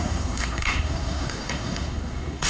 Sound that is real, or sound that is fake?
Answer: fake